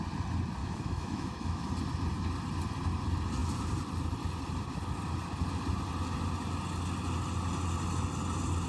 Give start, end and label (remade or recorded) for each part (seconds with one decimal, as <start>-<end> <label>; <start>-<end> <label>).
0.0-0.6 recorded; 0.6-1.7 remade; 1.7-8.7 recorded